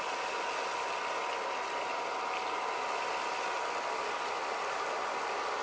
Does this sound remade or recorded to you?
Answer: recorded